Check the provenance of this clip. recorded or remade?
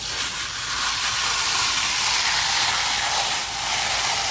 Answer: remade